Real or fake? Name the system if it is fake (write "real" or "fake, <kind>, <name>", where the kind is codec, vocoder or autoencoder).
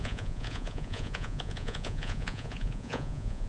fake, vocoder, Vocos